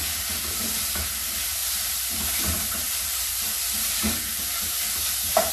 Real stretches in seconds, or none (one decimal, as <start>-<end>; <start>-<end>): none